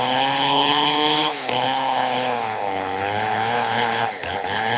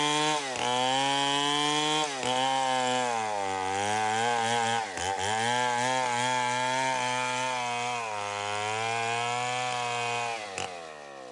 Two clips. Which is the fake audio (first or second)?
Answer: first